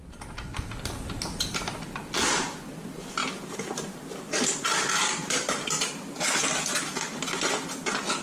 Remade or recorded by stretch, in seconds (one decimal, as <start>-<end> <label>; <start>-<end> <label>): 0.0-3.2 recorded; 3.2-6.5 remade; 6.5-8.2 recorded

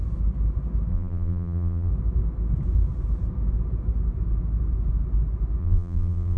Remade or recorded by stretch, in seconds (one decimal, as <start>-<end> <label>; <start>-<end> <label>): 0.0-0.9 recorded; 0.9-1.9 remade; 1.9-5.6 recorded; 5.6-6.4 remade

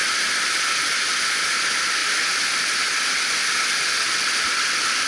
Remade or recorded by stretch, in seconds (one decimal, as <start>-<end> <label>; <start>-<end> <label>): 0.0-0.7 remade; 0.7-5.1 recorded

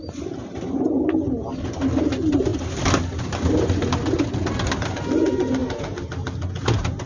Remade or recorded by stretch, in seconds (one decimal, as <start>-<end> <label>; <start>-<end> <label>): 0.0-7.1 recorded